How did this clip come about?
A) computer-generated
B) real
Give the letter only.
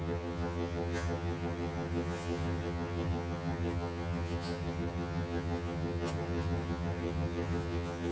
A